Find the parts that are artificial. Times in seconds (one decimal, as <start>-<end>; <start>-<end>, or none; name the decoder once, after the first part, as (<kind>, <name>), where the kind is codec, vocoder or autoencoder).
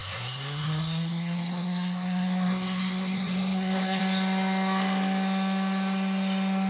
0.0-4.0 (codec, SNAC)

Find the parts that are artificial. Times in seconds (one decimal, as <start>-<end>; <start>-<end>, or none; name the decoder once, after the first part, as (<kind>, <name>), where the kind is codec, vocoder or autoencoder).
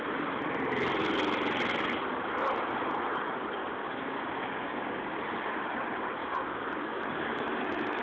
3.6-5.1 (codec, DAC); 6.2-8.0